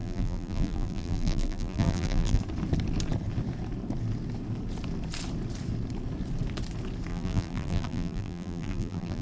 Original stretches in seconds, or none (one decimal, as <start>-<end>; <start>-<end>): 2.4-7.1